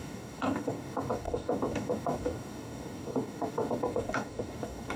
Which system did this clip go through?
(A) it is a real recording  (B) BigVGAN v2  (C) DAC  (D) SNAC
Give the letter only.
C